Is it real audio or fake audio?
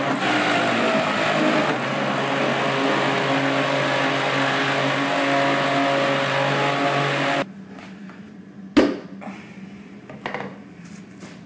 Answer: real